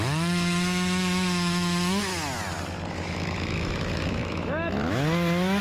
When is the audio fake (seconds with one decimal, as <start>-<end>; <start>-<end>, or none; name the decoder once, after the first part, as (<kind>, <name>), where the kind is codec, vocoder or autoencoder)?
0.0-2.1 (autoencoder, DAC-VAE); 2.9-4.8